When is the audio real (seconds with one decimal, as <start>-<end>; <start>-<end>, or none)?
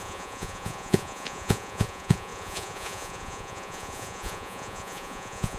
none